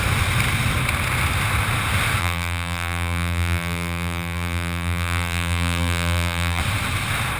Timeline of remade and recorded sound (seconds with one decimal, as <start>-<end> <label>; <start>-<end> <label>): 0.0-2.2 recorded; 2.2-6.6 remade; 6.6-7.4 recorded